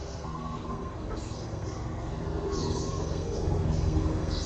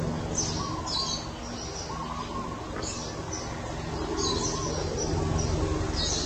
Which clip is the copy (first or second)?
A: first